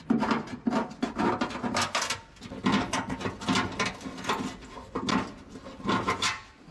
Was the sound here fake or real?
real